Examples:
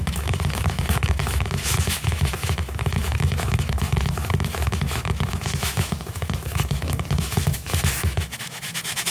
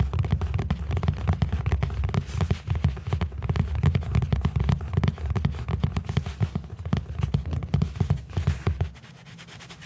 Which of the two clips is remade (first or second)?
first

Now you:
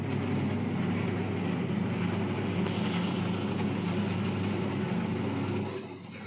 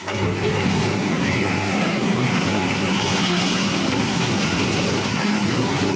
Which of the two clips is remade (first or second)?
second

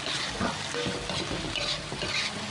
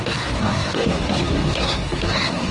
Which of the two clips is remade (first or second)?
second